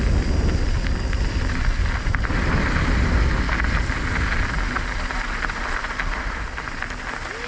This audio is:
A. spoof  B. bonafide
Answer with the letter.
B